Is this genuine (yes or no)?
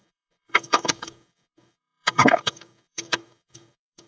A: no